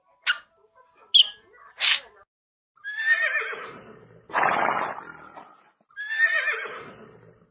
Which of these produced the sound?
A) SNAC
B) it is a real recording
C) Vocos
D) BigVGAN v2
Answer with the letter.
B